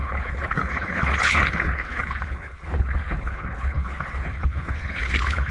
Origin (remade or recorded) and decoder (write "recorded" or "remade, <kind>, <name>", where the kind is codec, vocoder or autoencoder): remade, codec, HILCodec